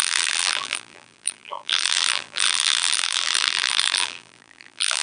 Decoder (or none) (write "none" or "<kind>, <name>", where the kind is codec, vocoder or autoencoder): vocoder, BigVGAN v2